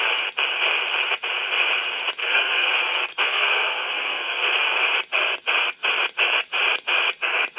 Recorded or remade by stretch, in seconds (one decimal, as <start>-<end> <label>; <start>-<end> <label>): 0.0-2.2 recorded; 2.2-2.7 remade; 2.7-3.1 recorded; 3.1-4.4 remade; 4.4-7.6 recorded